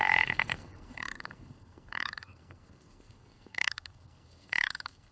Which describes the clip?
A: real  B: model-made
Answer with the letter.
B